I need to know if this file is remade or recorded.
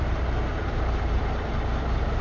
remade